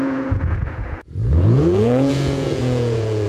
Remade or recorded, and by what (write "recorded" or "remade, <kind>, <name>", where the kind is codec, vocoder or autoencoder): remade, vocoder, Vocos